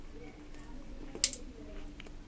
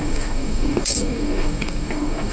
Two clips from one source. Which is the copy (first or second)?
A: second